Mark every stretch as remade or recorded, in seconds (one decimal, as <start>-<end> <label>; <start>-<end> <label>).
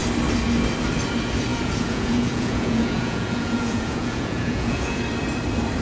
0.0-1.5 recorded; 1.5-5.0 remade; 5.0-5.8 recorded